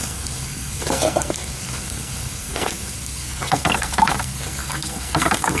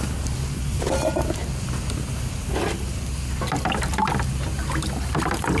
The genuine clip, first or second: second